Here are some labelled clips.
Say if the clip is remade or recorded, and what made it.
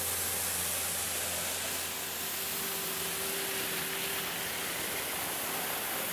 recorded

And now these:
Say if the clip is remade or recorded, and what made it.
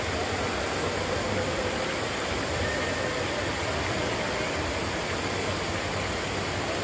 recorded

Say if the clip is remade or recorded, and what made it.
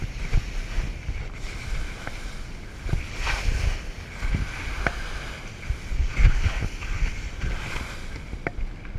recorded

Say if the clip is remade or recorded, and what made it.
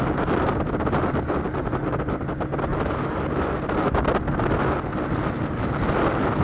recorded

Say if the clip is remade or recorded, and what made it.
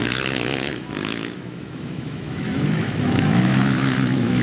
remade, autoencoder, DAC-VAE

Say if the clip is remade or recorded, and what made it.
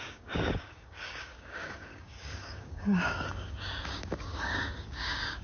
remade, codec, DAC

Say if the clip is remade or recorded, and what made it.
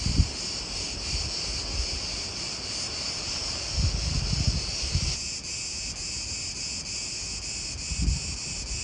recorded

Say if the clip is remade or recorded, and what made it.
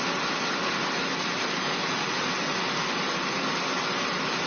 recorded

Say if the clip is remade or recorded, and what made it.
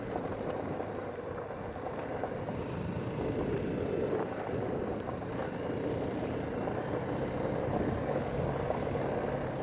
recorded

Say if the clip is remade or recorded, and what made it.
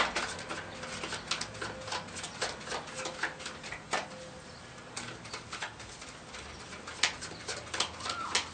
recorded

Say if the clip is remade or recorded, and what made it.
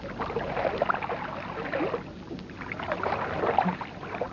recorded